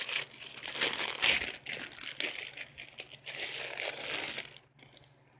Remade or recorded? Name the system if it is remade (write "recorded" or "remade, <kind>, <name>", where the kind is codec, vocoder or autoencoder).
recorded